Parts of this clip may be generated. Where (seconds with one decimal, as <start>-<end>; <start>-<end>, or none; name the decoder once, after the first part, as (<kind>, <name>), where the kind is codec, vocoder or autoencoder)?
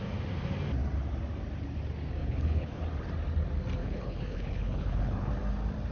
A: 2.2-2.8 (codec, HILCodec); 3.8-5.3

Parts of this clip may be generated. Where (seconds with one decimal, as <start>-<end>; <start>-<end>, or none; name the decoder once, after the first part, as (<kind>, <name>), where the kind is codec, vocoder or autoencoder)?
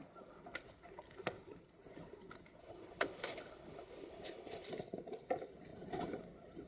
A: 2.6-4.7 (codec, HILCodec)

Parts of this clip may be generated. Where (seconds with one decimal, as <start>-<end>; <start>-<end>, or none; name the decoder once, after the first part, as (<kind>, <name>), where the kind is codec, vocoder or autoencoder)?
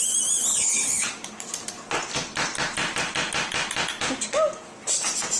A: 0.5-1.1 (codec, HILCodec)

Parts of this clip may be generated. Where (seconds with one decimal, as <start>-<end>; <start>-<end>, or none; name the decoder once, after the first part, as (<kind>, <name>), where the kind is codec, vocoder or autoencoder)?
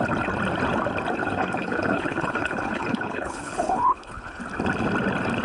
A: 1.2-4.4 (codec, HILCodec)